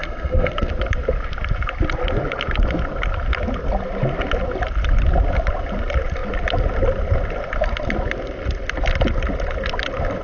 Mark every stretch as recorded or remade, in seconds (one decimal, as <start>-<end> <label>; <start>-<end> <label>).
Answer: 0.0-0.7 remade; 0.7-10.2 recorded